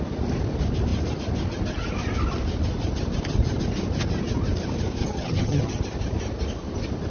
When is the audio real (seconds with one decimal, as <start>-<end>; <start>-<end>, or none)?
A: 0.0-5.0; 5.8-7.1